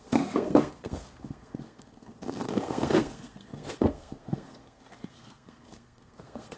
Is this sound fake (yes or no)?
yes